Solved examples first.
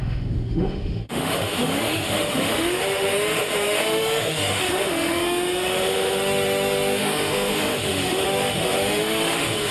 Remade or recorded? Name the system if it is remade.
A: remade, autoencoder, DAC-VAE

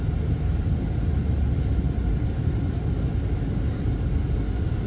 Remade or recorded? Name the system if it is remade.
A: recorded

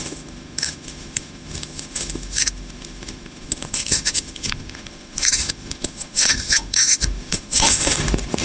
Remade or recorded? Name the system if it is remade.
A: remade, autoencoder, DAC-VAE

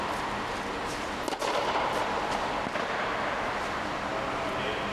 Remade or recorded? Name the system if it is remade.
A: recorded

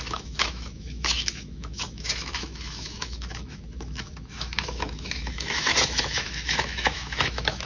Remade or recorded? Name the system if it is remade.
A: remade, autoencoder, DAC-VAE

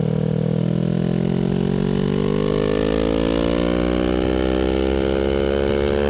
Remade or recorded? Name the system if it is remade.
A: recorded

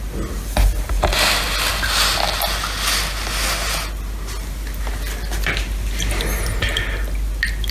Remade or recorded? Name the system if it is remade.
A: recorded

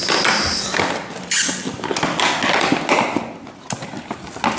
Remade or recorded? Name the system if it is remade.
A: recorded